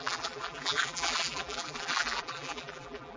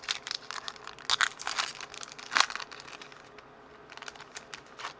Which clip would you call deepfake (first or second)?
first